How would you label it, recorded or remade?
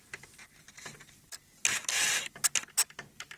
recorded